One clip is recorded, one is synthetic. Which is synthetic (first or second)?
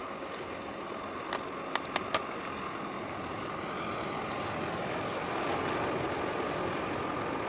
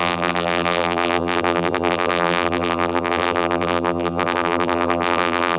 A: second